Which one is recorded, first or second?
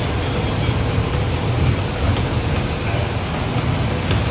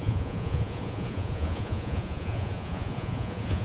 first